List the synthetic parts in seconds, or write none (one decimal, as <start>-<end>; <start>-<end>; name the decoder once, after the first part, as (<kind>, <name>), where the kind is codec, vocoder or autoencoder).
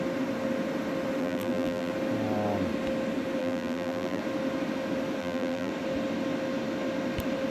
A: 1.2-1.9 (vocoder, BigVGAN v2); 3.4-4.2; 5.2-5.7